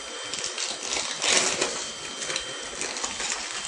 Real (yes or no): yes